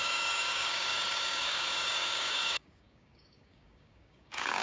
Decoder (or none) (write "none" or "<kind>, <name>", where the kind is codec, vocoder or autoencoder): codec, DAC